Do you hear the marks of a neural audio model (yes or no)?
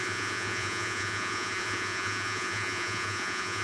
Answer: yes